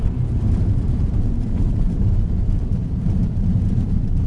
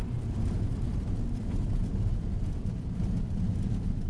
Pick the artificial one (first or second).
first